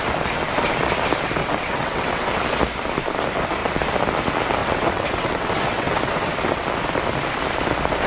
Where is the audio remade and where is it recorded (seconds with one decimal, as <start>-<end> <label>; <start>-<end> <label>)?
0.0-1.4 recorded; 1.4-2.3 remade; 2.3-4.6 recorded; 4.6-6.6 remade; 6.6-8.1 recorded